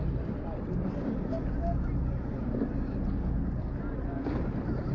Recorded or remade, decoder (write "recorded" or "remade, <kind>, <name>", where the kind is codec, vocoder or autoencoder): recorded